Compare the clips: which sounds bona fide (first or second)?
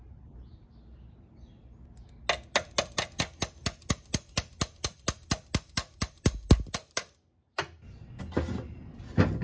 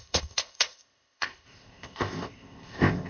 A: first